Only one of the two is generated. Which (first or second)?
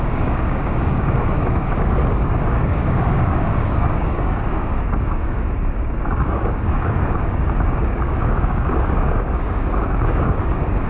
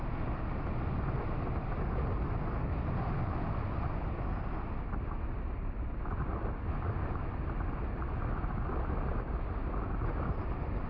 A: first